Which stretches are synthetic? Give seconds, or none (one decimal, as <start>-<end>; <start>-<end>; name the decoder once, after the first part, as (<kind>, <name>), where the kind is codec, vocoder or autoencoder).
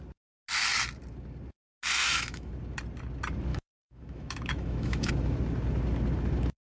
2.0-2.5 (autoencoder, DAC-VAE); 3.5-5.1